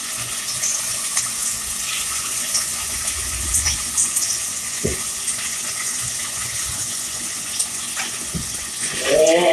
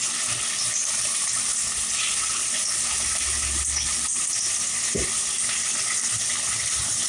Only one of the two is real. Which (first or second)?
second